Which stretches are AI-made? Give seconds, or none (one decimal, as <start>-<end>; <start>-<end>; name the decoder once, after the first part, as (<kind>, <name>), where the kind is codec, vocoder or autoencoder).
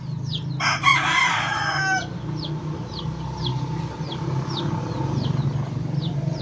none